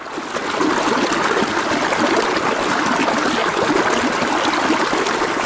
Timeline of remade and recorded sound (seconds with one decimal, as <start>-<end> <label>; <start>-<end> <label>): 0.0-5.5 recorded